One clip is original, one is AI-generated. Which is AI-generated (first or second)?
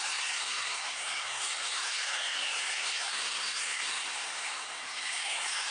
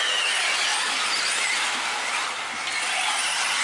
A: first